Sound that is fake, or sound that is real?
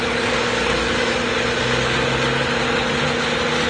real